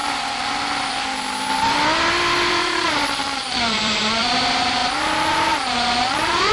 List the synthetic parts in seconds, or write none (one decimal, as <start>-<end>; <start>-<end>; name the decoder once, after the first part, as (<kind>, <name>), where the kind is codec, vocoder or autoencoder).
2.5-4.8 (vocoder, BigVGAN v2); 6.0-6.5